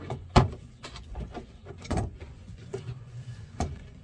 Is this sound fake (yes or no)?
yes